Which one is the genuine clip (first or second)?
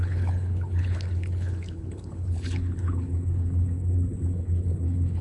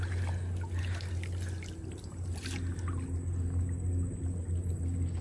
second